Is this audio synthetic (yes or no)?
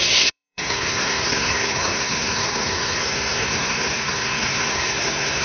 yes